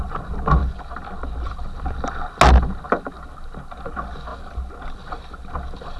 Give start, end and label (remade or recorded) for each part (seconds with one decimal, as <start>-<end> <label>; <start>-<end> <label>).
0.0-6.0 recorded